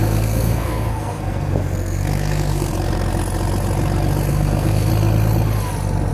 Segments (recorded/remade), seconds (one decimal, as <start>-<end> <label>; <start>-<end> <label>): 0.0-2.7 remade; 2.7-4.3 recorded; 4.3-4.9 remade; 4.9-6.1 recorded